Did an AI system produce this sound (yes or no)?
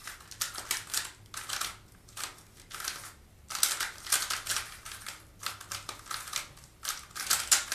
no